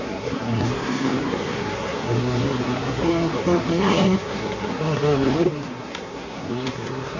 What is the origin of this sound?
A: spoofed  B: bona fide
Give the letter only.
A